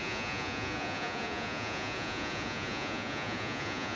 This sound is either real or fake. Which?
fake